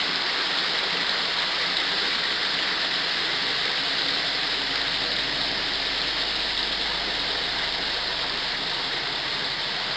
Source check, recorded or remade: recorded